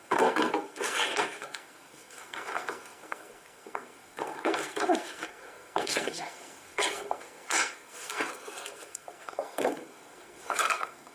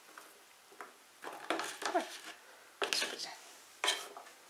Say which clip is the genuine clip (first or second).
second